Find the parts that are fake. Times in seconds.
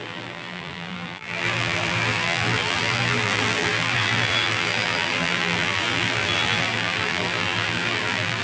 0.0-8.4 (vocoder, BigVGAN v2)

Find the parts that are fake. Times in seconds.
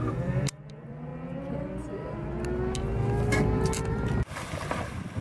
0.0-1.1 (vocoder, BigVGAN v2); 3.9-5.2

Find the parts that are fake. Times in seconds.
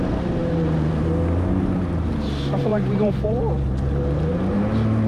0.4-1.1 (vocoder, BigVGAN v2); 2.7-3.3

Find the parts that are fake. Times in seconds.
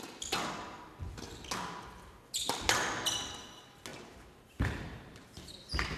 3.9-6.0 (vocoder, BigVGAN v2)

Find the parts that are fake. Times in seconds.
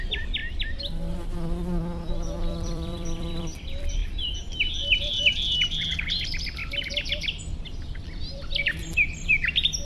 0.0-0.4 (vocoder, BigVGAN v2); 2.1-9.8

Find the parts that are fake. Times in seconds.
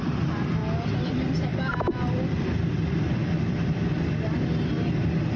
0.0-0.6 (vocoder, BigVGAN v2); 1.1-5.4